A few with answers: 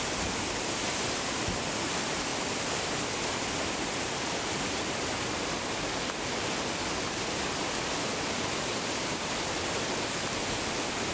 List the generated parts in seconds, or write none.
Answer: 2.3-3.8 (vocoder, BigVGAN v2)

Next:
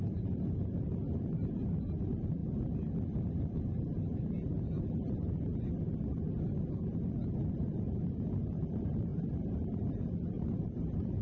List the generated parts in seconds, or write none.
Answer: 0.0-2.4 (vocoder, BigVGAN v2); 7.5-11.2

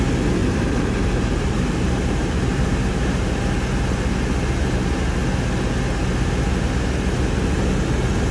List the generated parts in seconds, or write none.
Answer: 0.4-3.0 (vocoder, BigVGAN v2)

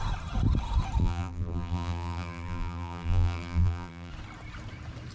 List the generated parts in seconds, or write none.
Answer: 1.0-4.1 (vocoder, BigVGAN v2)

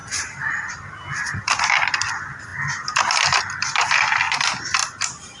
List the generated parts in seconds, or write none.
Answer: 4.8-5.4 (vocoder, BigVGAN v2)

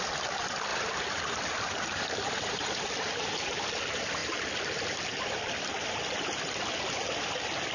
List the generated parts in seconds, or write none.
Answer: 0.7-3.7 (vocoder, BigVGAN v2); 4.2-5.7

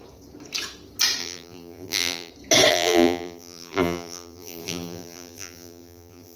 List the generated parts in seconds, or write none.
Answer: 1.2-2.3 (vocoder, BigVGAN v2); 2.7-6.4

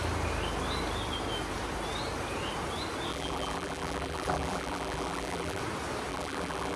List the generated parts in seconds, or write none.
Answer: 3.1-5.6 (vocoder, BigVGAN v2); 6.1-6.8